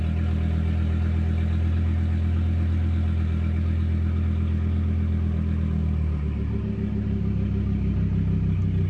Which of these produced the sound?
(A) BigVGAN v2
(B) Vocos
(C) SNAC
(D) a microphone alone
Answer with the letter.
D